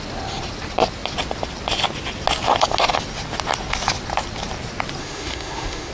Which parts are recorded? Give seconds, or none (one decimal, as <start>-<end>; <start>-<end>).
0.0-5.0